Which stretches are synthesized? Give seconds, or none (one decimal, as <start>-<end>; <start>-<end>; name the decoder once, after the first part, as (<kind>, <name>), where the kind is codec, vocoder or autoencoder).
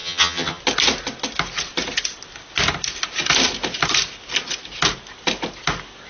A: 0.0-0.6 (vocoder, HiFi-GAN)